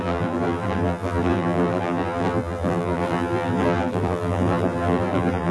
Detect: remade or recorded remade